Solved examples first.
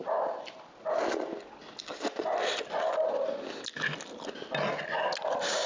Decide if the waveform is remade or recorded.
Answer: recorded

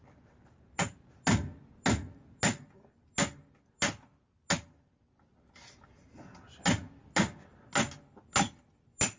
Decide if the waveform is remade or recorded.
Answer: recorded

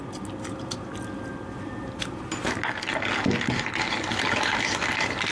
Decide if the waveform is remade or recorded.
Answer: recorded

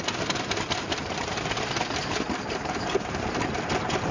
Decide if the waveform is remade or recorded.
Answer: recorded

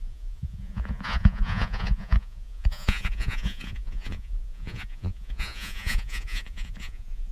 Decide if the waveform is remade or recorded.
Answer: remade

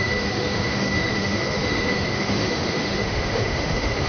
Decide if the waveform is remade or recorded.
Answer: remade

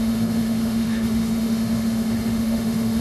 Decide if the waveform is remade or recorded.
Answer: remade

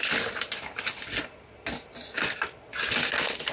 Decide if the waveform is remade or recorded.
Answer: recorded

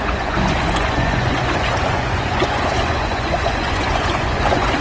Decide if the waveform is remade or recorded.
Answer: remade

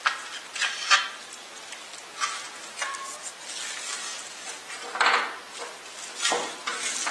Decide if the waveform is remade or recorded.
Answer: recorded